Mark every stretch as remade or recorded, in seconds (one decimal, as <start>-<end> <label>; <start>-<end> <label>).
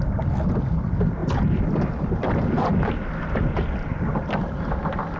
0.0-5.2 recorded